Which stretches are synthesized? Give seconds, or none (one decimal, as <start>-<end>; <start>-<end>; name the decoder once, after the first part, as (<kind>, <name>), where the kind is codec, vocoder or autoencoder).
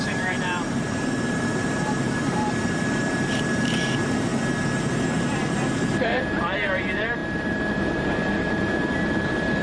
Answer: 0.0-4.3 (vocoder, BigVGAN v2); 4.9-9.6